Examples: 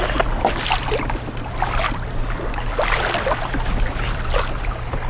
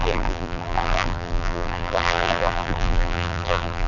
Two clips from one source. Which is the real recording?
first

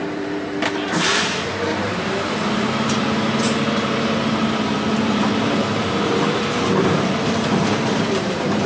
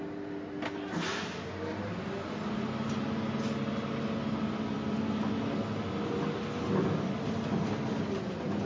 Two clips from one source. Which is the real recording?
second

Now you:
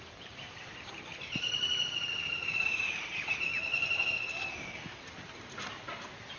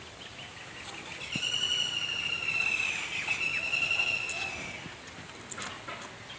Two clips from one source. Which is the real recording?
second